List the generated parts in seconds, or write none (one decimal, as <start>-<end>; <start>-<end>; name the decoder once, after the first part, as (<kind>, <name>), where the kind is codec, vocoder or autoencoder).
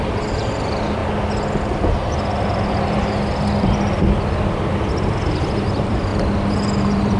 0.0-1.0 (vocoder, BigVGAN v2); 5.3-6.1; 6.8-7.2